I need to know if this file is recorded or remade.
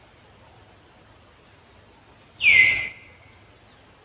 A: recorded